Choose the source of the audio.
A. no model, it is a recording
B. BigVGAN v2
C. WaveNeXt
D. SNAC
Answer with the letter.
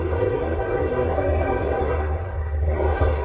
D